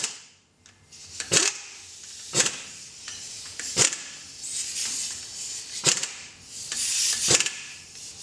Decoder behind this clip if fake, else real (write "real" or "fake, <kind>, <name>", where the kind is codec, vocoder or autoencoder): real